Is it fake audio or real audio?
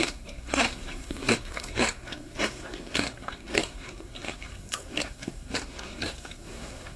fake